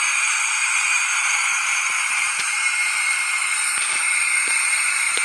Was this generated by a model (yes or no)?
yes